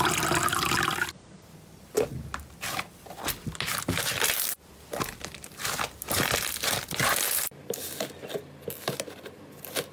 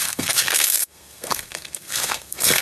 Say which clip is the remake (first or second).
second